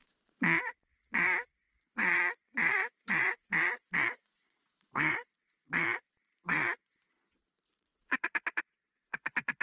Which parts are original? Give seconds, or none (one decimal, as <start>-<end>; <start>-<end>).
none

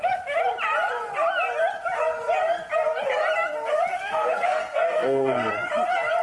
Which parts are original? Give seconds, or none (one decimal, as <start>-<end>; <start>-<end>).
0.0-3.9; 5.5-6.2

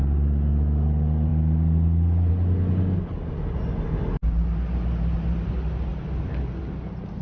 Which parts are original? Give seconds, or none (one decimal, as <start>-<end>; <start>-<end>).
0.0-7.2

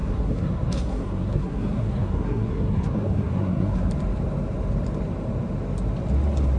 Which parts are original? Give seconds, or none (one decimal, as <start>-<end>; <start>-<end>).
3.9-6.6

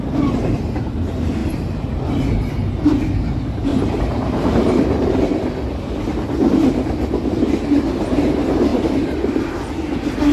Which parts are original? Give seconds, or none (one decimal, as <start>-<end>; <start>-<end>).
0.0-1.4; 1.9-3.7; 5.2-10.3